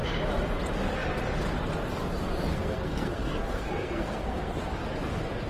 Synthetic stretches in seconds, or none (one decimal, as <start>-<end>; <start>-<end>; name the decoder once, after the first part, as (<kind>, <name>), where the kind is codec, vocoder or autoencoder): 2.5-4.6 (codec, SNAC)